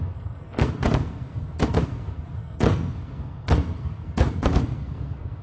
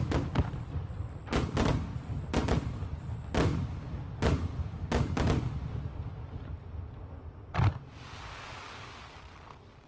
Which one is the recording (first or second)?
second